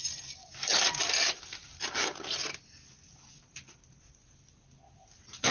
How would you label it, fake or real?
real